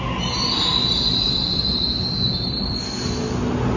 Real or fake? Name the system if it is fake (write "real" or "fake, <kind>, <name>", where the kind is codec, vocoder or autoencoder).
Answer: real